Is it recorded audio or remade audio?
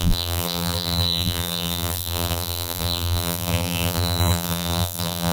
remade